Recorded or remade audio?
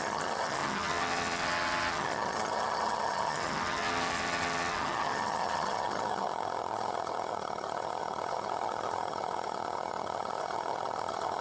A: remade